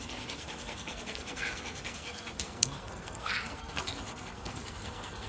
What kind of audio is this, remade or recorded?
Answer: remade